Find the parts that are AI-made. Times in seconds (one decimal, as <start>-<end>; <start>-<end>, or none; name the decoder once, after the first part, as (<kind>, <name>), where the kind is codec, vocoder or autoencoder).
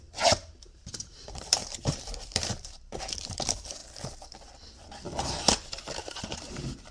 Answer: 0.0-3.8 (vocoder, BigVGAN v2); 6.2-6.9